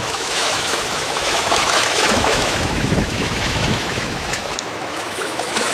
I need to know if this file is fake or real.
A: fake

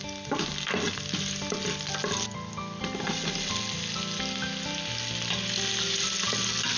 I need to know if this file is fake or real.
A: real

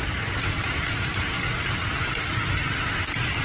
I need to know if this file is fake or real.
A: real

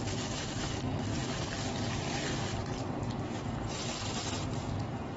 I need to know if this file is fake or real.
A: real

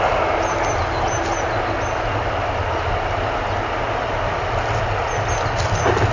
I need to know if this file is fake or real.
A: real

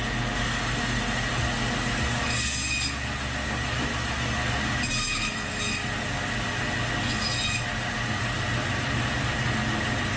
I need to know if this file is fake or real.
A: real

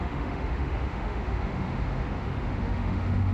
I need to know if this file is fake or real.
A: fake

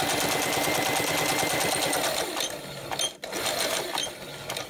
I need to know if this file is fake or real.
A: real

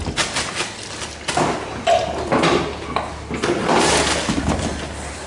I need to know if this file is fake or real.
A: real